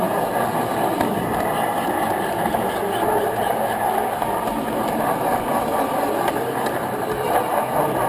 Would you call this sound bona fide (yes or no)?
yes